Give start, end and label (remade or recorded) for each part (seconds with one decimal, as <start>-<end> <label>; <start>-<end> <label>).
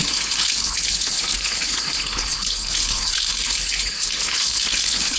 0.0-5.2 remade